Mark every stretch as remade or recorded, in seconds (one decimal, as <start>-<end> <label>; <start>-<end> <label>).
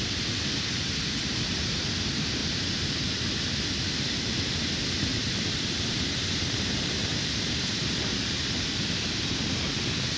0.0-1.3 recorded; 1.3-1.8 remade; 1.8-5.1 recorded; 5.1-8.3 remade; 8.3-10.2 recorded